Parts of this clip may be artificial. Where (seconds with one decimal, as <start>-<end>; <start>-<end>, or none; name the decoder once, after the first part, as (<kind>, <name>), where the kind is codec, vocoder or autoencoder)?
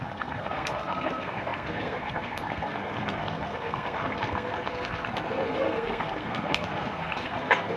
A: 0.0-7.8 (codec, SNAC)